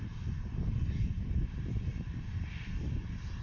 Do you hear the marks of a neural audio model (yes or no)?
no